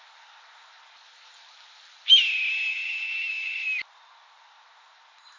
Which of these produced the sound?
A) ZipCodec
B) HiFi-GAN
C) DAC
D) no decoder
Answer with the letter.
D